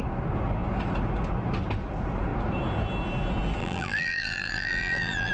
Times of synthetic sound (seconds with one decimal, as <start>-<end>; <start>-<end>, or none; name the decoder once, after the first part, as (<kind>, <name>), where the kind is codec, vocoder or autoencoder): 3.6-5.3 (vocoder, BigVGAN v2)